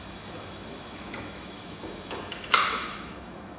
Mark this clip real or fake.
fake